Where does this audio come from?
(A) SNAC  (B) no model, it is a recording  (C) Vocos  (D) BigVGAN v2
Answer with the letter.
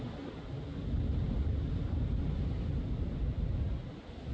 B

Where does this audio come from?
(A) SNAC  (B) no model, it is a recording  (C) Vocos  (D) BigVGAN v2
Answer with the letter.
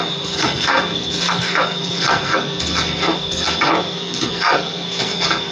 A